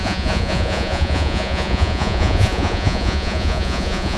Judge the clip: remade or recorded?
remade